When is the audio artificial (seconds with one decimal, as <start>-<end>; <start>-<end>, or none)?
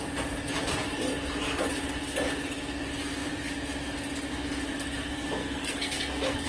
5.4-6.5